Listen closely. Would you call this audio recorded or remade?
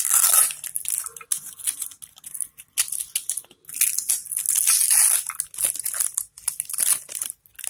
recorded